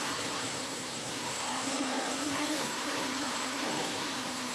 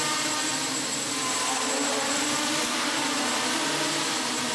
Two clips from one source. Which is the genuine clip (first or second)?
second